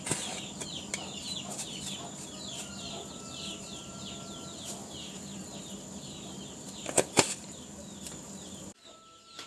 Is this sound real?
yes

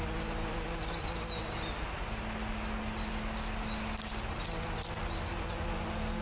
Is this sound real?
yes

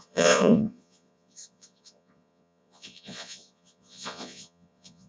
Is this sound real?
no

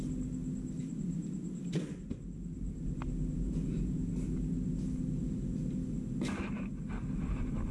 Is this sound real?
yes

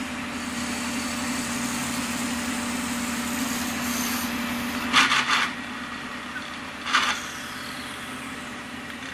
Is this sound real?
yes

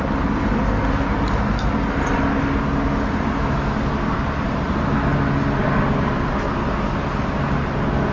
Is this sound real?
yes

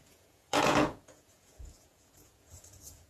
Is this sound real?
no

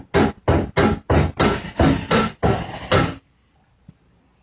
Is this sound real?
yes